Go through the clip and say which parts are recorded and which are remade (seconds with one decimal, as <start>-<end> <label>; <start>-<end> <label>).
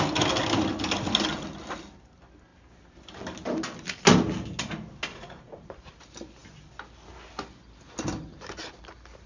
0.0-5.1 recorded; 5.1-5.7 remade; 5.7-9.3 recorded